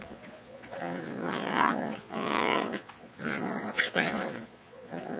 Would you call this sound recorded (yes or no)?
no